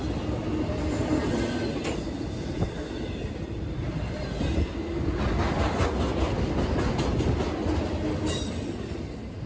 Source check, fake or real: real